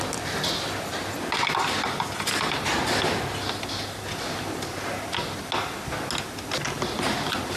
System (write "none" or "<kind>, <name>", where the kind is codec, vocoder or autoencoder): none